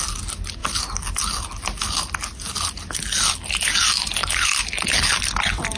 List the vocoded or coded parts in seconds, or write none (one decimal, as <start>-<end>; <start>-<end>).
none